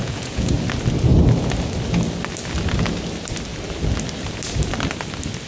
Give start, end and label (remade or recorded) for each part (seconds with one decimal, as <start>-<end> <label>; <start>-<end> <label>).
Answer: 0.0-0.5 remade; 0.5-5.5 recorded